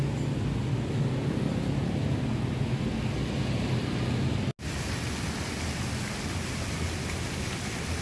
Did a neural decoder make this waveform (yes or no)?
no